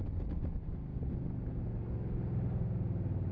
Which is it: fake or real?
real